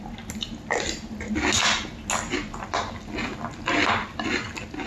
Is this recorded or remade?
recorded